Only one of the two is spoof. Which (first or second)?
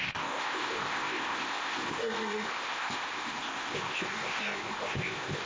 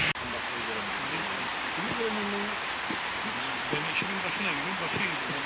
first